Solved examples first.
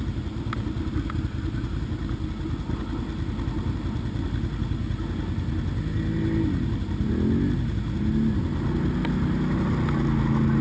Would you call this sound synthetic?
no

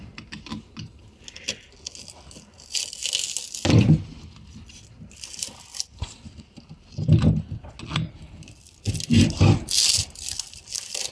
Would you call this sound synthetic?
no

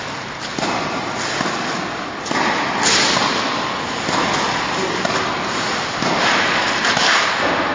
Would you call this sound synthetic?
no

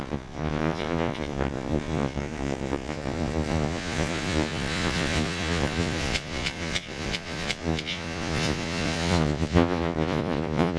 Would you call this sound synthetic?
yes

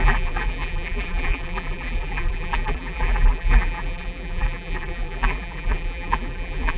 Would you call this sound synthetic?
yes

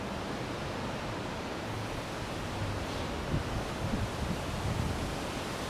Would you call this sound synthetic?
no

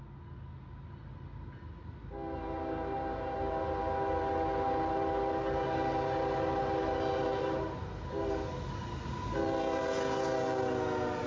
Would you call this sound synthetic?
no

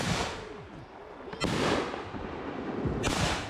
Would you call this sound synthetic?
no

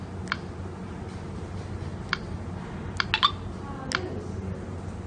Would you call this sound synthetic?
no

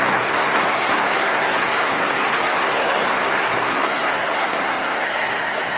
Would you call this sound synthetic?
yes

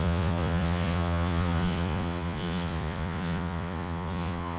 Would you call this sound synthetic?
yes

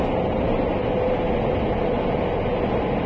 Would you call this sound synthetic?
no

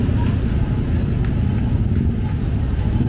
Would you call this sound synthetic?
no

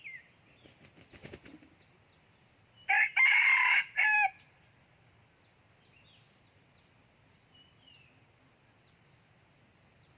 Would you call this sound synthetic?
no